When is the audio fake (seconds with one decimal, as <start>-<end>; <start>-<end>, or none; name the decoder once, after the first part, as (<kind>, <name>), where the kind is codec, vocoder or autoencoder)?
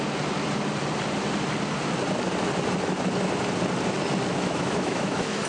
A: 4.3-5.5 (autoencoder, DAC-VAE)